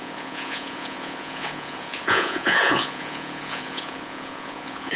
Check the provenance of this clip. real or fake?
fake